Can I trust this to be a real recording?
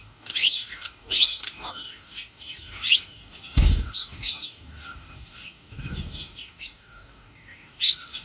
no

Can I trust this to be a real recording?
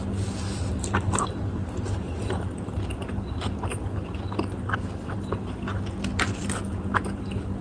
yes